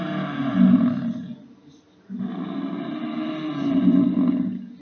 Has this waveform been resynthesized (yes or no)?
no